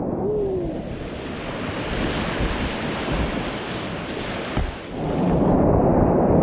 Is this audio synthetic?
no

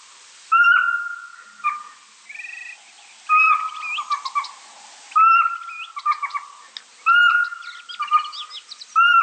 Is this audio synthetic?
no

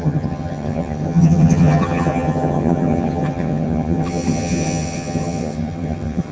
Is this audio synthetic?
yes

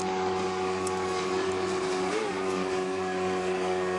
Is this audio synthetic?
yes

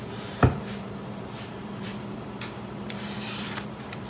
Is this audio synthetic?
yes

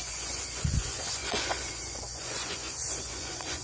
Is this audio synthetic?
yes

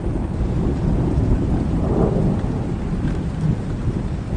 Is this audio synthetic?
no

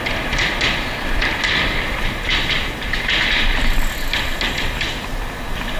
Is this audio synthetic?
no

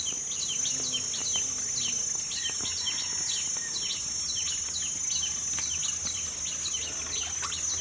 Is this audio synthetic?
no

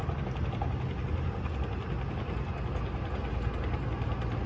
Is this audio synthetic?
no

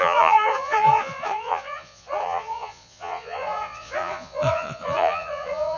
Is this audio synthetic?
yes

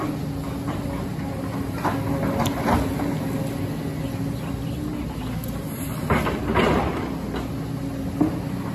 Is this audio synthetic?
no